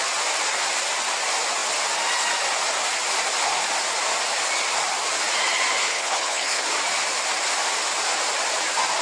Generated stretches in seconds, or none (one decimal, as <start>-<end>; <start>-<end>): 5.8-6.6